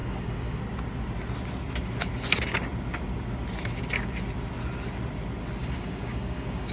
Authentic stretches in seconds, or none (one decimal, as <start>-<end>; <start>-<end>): 0.6-5.6